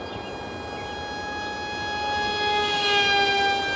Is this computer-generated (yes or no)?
no